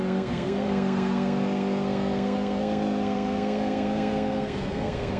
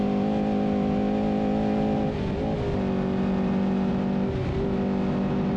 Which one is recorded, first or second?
second